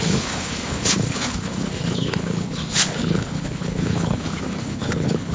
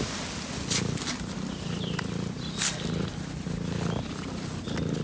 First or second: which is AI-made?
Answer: first